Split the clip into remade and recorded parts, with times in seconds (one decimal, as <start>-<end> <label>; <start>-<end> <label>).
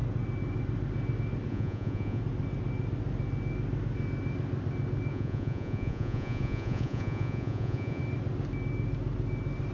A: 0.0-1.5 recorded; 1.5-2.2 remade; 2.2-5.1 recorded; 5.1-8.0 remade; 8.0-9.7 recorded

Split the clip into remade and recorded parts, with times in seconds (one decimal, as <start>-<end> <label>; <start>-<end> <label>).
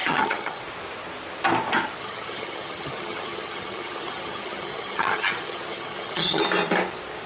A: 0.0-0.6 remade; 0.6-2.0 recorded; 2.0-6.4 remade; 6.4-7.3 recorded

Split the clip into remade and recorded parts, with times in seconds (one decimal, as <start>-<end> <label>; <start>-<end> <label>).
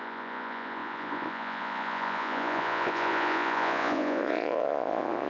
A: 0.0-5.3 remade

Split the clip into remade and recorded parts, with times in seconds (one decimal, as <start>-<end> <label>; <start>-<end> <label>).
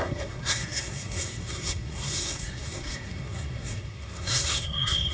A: 0.0-5.1 remade